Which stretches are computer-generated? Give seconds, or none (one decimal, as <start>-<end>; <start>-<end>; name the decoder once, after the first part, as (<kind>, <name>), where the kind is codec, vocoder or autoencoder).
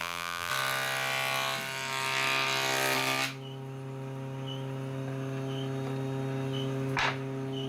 0.0-0.5 (vocoder, BigVGAN v2)